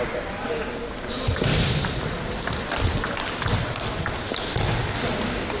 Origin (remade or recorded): recorded